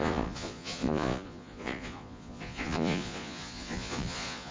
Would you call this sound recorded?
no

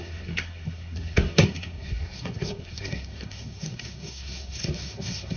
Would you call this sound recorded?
no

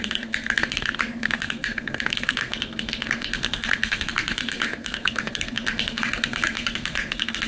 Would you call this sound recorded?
no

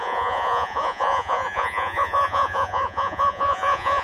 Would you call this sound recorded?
no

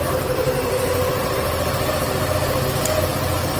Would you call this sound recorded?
yes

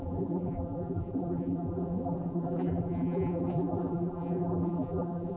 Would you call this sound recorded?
no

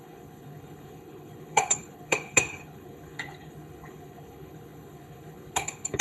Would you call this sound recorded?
no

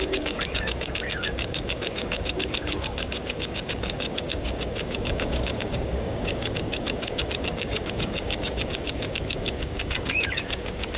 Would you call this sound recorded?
no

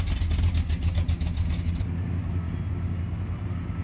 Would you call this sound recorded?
yes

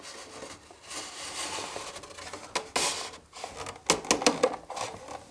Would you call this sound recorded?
yes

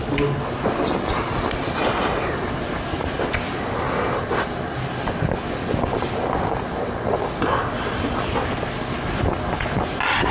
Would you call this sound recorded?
yes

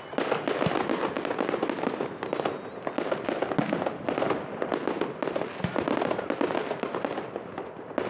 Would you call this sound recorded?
yes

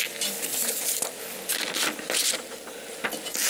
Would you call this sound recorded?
yes